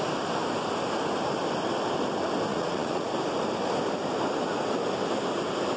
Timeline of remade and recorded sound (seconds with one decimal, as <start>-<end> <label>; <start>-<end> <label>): 0.0-2.5 recorded; 2.5-3.1 remade; 3.1-5.8 recorded